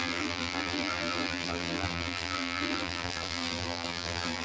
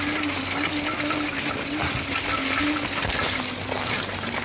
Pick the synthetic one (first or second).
first